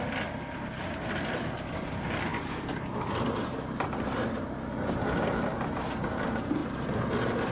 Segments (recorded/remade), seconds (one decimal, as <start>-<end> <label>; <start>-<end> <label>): 0.0-7.5 recorded